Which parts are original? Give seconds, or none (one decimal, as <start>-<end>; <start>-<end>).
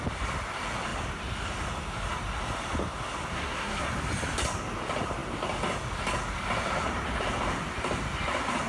0.0-3.3; 3.9-8.7